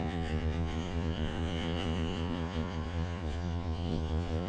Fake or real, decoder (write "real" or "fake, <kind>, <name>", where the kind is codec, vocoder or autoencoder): fake, vocoder, Vocos